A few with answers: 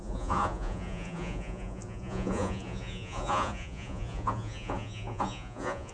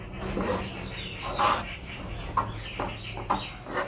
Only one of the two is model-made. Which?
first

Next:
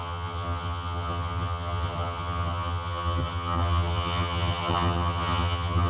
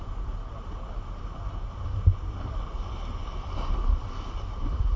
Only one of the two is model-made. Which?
first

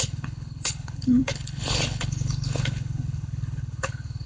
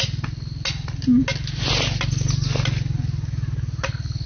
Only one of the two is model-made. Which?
first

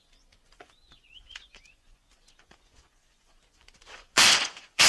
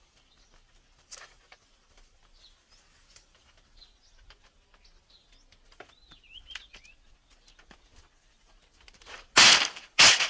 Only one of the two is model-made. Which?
first